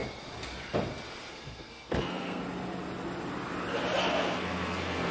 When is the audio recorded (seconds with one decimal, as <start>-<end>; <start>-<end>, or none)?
0.0-1.3; 2.4-4.0